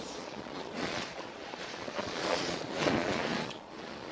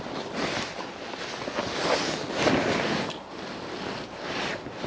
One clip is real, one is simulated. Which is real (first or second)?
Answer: second